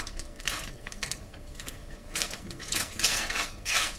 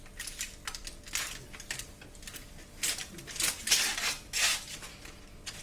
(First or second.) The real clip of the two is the second